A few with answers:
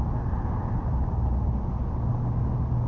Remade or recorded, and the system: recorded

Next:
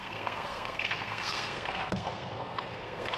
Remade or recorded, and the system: remade, codec, SNAC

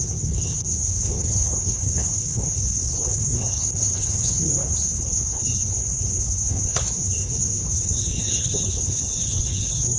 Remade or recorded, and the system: remade, codec, HILCodec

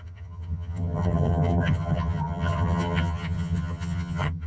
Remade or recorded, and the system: remade, vocoder, HiFi-GAN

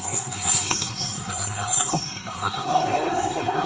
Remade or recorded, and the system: remade, codec, SNAC